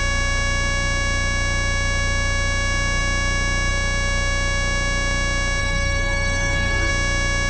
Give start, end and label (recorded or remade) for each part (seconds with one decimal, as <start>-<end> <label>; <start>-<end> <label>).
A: 0.0-5.6 recorded; 5.6-6.9 remade; 6.9-7.5 recorded